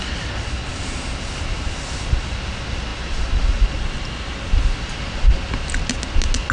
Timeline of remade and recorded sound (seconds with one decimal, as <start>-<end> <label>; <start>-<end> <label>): 0.0-6.5 recorded